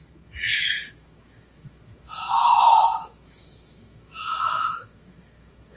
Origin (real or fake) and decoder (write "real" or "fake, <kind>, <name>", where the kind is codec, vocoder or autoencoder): fake, autoencoder, DAC-VAE